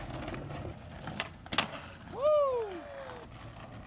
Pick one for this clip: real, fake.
real